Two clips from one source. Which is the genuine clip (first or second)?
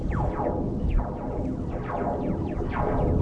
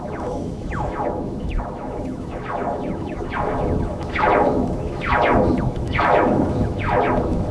first